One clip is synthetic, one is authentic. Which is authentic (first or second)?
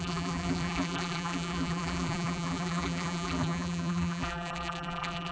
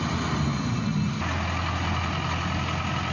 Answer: second